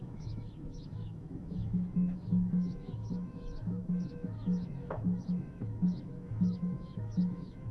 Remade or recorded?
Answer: remade